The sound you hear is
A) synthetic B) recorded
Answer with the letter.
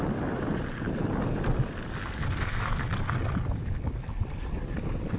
B